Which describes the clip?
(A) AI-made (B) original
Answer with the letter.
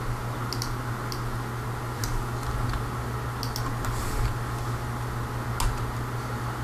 B